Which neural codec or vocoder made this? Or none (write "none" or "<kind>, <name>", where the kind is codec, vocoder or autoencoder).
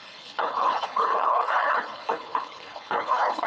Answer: codec, HILCodec